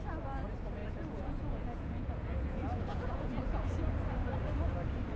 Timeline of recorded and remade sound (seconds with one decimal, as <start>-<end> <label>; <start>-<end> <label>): 0.0-0.8 recorded; 0.8-3.9 remade; 3.9-5.2 recorded